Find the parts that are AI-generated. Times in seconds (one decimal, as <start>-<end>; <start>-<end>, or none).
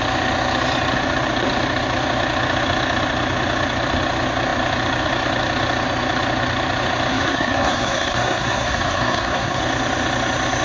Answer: 7.1-9.6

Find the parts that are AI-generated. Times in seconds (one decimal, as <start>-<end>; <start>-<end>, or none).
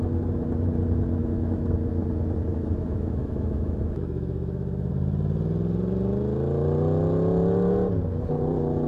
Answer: 1.2-1.7; 2.5-4.9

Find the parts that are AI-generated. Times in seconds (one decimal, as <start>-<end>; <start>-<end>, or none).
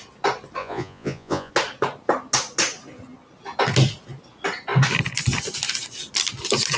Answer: 0.6-1.5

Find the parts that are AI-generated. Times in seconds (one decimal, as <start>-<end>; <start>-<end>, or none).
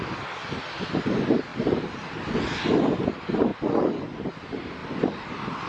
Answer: none